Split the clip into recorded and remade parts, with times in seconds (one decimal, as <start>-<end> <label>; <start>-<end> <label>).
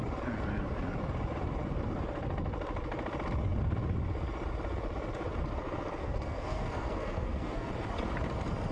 0.0-6.0 recorded; 6.0-7.7 remade; 7.7-8.7 recorded